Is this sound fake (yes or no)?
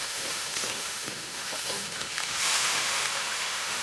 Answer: yes